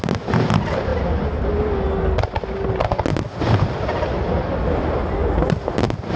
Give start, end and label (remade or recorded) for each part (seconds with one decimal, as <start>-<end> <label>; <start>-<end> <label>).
0.0-6.2 recorded